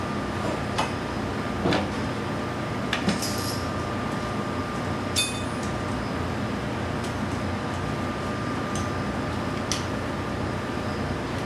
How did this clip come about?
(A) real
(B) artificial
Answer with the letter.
A